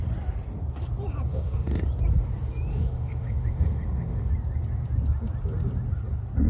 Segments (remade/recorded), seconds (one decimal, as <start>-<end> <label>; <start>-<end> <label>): 0.0-1.3 recorded; 1.3-1.8 remade; 1.8-2.7 recorded; 2.7-4.3 remade; 4.3-6.5 recorded